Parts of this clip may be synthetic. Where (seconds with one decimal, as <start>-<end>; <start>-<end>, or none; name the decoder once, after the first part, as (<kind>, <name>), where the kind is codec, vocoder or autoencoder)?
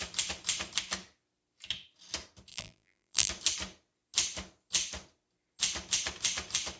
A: 2.5-3.3 (vocoder, BigVGAN v2)